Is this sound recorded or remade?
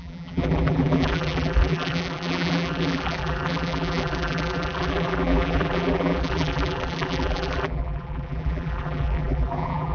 remade